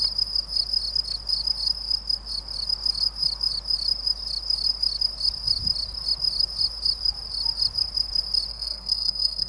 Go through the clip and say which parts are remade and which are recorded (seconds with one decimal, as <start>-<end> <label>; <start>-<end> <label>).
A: 0.0-8.5 recorded; 8.5-9.5 remade